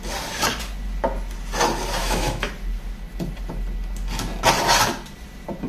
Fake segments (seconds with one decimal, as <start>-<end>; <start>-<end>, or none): 2.0-2.5